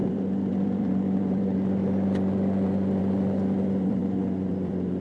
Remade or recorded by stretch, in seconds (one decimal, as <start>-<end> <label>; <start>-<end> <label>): 0.0-4.0 remade; 4.0-4.5 recorded; 4.5-5.0 remade